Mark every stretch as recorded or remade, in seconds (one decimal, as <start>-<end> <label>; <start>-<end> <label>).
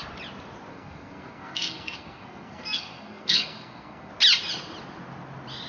0.0-0.7 recorded; 0.7-4.1 remade; 4.1-5.7 recorded